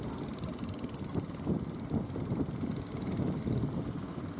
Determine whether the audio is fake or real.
real